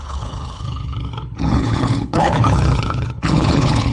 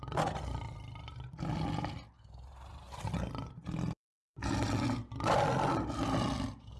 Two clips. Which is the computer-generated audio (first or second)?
first